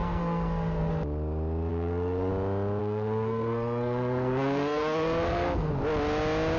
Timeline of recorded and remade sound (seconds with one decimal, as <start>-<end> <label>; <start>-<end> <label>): 0.0-0.9 remade; 0.9-1.7 recorded; 1.7-2.3 remade; 2.3-2.8 recorded; 2.8-5.7 remade; 5.7-6.6 recorded